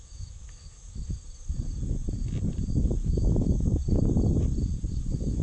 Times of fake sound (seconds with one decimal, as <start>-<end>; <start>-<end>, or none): 0.0-1.0; 3.0-3.8; 4.9-5.4